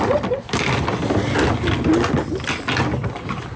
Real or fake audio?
real